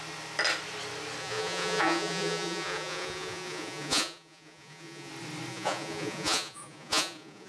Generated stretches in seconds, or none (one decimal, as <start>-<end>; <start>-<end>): 1.2-5.1; 5.5-7.5